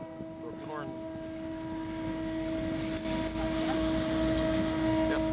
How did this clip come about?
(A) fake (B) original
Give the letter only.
B